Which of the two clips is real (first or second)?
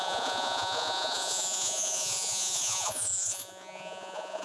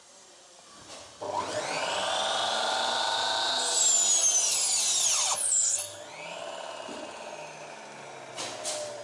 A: second